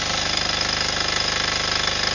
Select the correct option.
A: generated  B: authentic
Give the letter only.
B